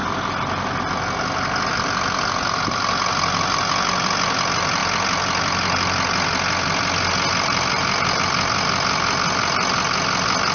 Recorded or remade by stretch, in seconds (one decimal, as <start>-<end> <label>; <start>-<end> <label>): 0.0-10.5 recorded